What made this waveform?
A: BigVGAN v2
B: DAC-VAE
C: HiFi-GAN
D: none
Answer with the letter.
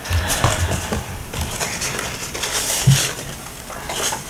D